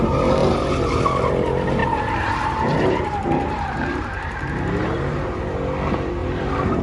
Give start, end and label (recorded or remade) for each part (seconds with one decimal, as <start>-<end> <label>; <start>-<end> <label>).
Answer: 0.0-0.4 recorded; 0.4-1.3 remade; 1.3-1.8 recorded; 1.8-5.5 remade; 5.5-6.2 recorded; 6.2-6.8 remade